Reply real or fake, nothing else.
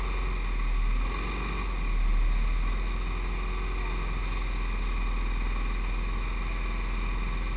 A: real